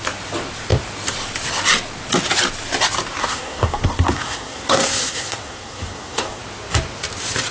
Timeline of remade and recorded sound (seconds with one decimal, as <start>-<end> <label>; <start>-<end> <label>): 0.0-3.2 recorded; 3.2-6.4 remade; 6.4-7.5 recorded